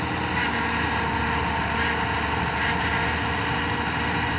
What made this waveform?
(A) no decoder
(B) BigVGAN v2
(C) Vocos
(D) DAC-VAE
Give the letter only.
A